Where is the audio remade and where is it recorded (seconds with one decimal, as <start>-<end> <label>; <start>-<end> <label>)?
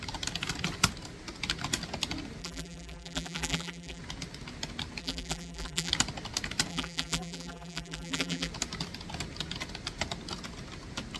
0.0-2.4 recorded; 2.4-4.0 remade; 4.0-5.0 recorded; 5.0-5.9 remade; 5.9-6.7 recorded; 6.7-8.5 remade; 8.5-11.2 recorded